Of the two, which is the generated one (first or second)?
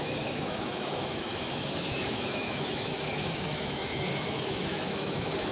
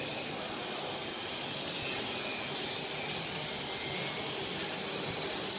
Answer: first